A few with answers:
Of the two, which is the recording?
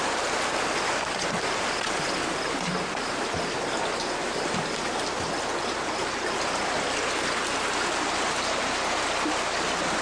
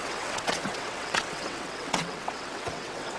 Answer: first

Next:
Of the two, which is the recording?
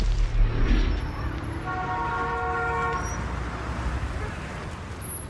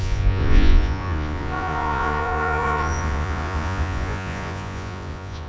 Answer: first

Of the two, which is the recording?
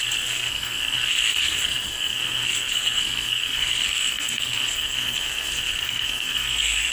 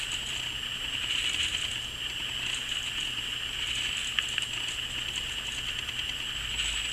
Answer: second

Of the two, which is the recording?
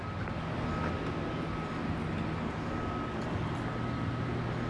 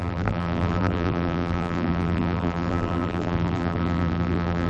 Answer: first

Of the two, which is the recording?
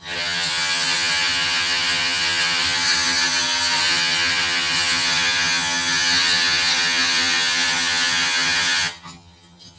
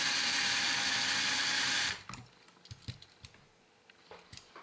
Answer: second